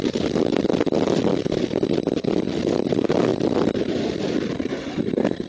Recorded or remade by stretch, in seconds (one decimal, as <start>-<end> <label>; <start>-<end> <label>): 0.0-5.5 remade